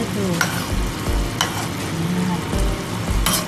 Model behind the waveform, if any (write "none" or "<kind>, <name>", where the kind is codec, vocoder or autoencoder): none